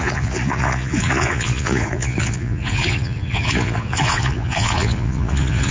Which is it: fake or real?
fake